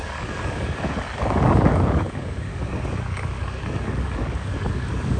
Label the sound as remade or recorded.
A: remade